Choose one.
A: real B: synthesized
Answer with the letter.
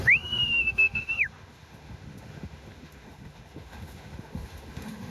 B